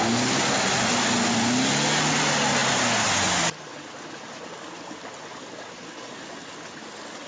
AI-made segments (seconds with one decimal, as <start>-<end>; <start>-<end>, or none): none